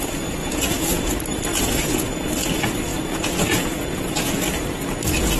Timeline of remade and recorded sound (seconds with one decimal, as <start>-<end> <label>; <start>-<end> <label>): 0.0-0.4 recorded; 0.4-1.1 remade; 1.1-1.5 recorded; 1.5-2.3 remade; 2.3-2.9 recorded; 2.9-4.4 remade; 4.4-5.4 recorded